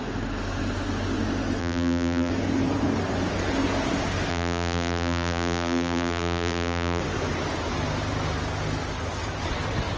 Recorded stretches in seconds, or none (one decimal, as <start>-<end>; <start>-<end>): 0.0-1.6; 2.3-4.3; 7.0-10.0